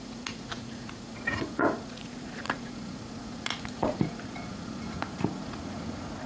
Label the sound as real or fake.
fake